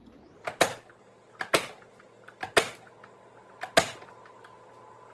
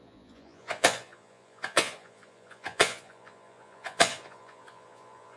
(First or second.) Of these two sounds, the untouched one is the first